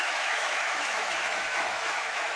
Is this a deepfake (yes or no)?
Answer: yes